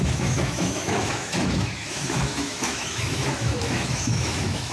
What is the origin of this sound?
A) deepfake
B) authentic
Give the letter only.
A